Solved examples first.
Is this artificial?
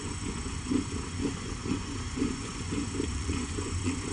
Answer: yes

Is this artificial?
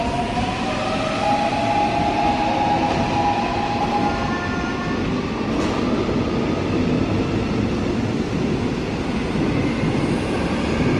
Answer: no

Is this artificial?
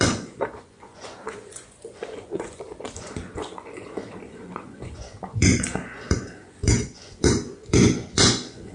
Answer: yes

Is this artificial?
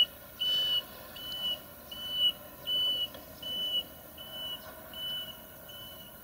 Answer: no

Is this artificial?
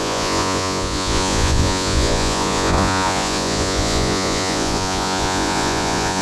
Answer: yes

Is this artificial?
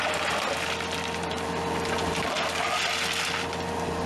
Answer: no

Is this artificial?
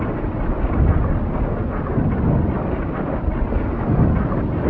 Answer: no